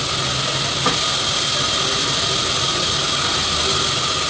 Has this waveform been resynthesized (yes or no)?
no